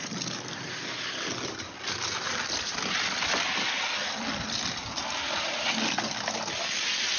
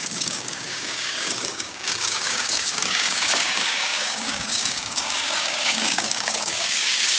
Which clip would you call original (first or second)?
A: first